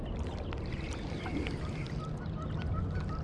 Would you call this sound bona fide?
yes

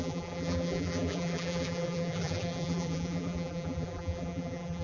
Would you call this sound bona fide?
no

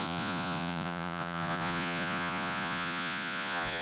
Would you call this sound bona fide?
no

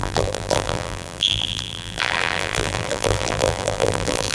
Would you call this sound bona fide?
no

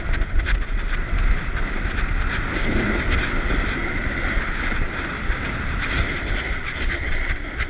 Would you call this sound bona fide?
yes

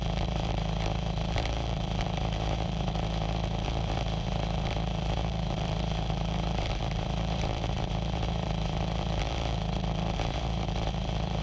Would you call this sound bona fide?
no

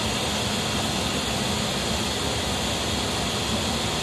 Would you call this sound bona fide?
yes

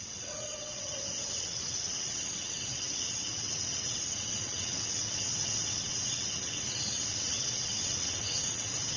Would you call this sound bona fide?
no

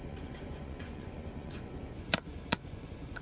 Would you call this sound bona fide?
no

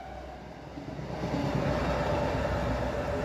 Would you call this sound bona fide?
yes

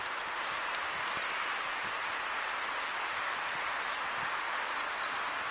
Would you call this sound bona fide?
yes